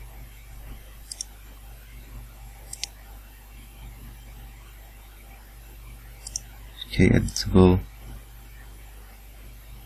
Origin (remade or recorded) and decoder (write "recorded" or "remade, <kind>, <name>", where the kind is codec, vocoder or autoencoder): recorded